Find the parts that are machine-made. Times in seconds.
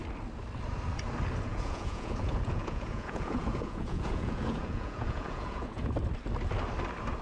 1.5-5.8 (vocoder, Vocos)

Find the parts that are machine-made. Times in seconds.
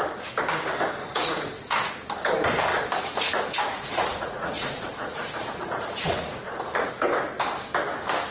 1.0-1.9 (vocoder, Vocos); 2.7-6.9